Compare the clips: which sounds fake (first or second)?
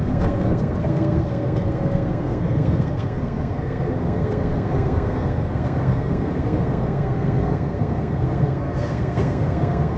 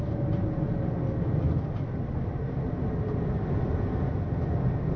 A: first